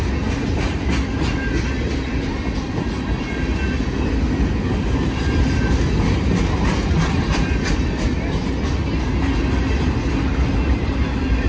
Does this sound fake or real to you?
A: real